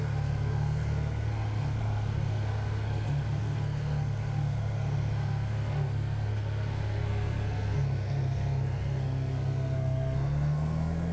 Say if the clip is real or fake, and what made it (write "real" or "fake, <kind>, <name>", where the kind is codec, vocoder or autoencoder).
fake, codec, SNAC